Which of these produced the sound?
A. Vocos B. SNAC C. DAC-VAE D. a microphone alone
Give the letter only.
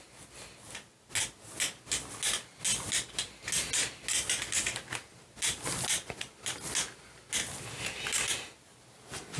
D